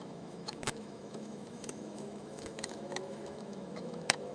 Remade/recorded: remade